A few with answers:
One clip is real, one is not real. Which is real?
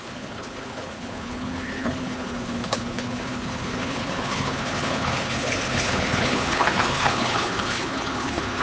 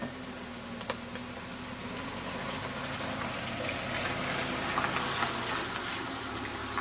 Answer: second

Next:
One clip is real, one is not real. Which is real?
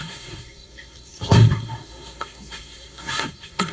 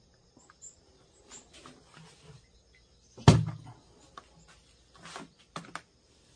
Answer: second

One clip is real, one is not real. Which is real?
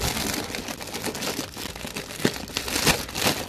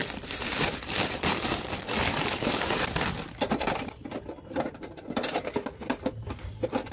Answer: first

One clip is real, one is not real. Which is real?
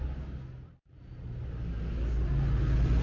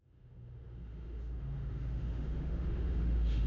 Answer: first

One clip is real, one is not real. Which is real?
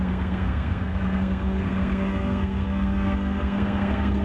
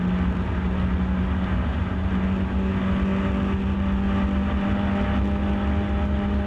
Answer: second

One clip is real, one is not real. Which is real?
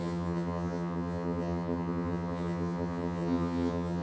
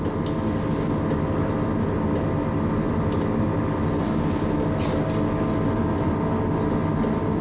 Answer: second